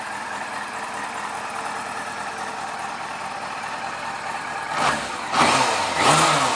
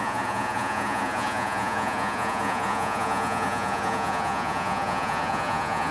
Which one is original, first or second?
first